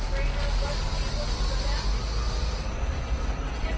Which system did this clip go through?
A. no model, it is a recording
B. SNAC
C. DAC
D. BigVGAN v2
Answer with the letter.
A